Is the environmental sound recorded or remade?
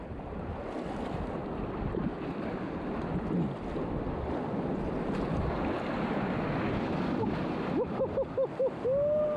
recorded